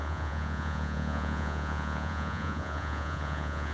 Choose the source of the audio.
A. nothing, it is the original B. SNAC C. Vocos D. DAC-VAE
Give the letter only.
C